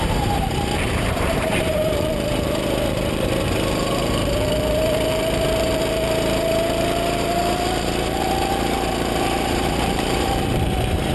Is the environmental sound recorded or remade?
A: remade